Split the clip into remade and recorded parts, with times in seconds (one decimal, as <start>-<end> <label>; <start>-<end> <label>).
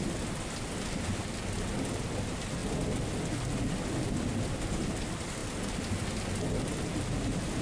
0.0-7.6 recorded